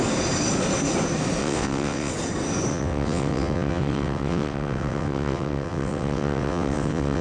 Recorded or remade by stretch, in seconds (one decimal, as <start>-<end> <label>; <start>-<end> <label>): 0.0-1.4 recorded; 1.4-2.1 remade; 2.1-2.7 recorded; 2.7-7.2 remade